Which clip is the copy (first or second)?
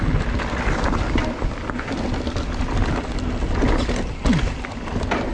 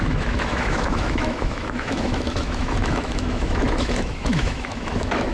second